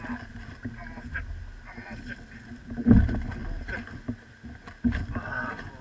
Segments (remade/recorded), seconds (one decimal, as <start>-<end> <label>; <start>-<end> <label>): 0.0-5.8 recorded